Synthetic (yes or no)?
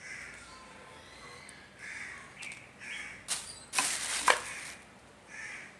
no